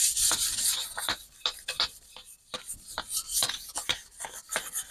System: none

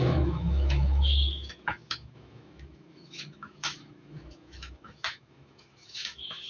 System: autoencoder, DAC-VAE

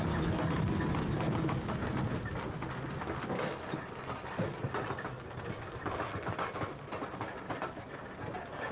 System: none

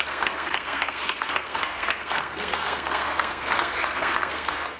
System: codec, SNAC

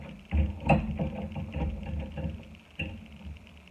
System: none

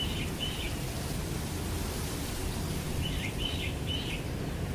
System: vocoder, BigVGAN v2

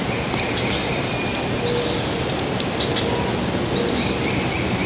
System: none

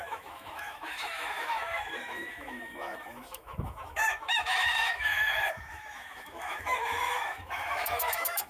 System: autoencoder, DAC-VAE